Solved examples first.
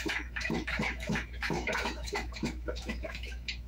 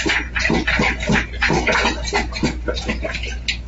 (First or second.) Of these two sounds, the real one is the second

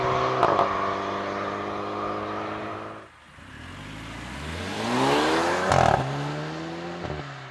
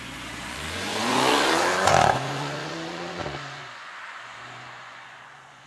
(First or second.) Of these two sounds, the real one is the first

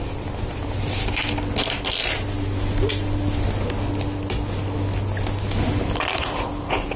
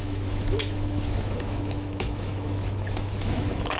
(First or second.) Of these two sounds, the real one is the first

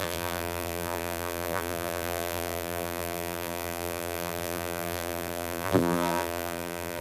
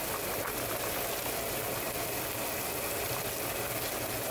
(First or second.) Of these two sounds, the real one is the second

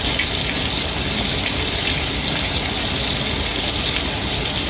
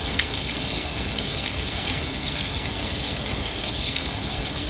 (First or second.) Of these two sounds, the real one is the first